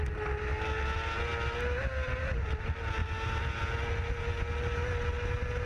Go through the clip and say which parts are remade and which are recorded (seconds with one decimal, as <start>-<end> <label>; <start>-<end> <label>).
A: 0.0-5.7 recorded